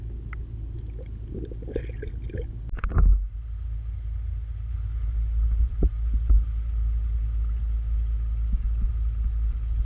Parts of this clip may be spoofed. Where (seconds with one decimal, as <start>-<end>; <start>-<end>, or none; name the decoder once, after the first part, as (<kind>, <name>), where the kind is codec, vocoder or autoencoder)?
none